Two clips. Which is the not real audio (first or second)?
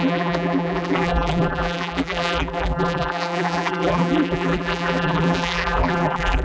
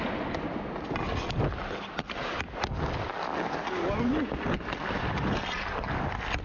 first